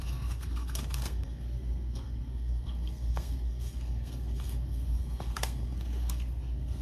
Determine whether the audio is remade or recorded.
remade